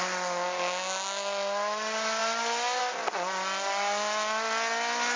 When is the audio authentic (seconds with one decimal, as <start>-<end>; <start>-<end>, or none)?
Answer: 0.0-5.2